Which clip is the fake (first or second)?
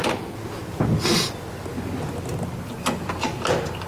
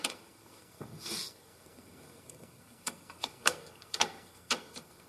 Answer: second